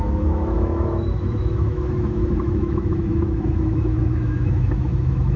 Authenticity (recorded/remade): remade